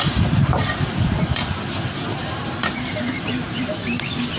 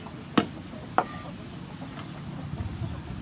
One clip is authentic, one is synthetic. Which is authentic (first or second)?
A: second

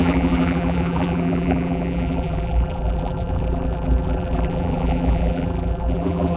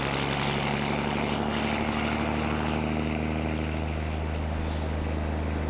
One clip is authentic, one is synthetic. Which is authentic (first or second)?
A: second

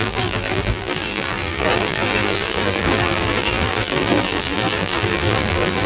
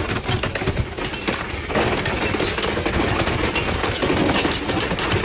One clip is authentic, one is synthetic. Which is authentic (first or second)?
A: second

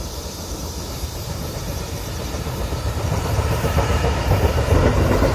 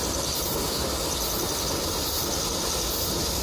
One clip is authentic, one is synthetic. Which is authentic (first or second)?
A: second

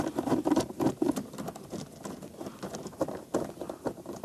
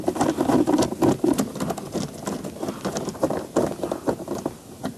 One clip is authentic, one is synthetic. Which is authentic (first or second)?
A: second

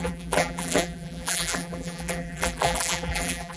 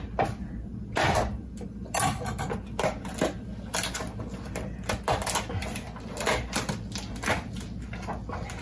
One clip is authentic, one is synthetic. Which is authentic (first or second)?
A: second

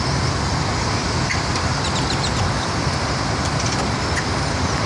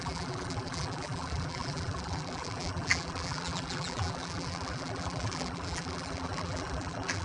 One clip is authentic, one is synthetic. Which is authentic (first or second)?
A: first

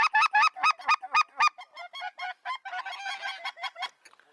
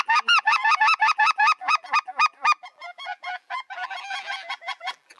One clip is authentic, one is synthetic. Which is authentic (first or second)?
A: first